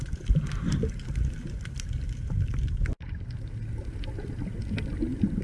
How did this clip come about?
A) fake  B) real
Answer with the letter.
B